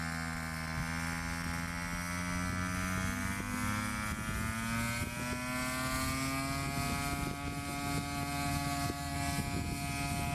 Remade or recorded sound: recorded